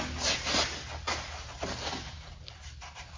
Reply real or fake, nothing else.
real